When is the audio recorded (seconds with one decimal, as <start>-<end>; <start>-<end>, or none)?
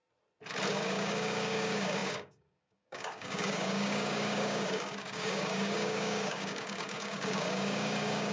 0.0-0.7